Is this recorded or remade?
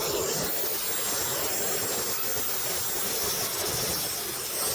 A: recorded